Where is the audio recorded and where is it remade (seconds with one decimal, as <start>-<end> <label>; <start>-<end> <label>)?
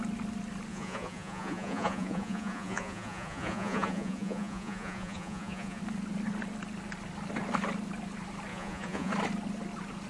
0.0-0.7 recorded; 0.7-5.8 remade; 5.8-8.5 recorded; 8.5-9.1 remade; 9.1-10.1 recorded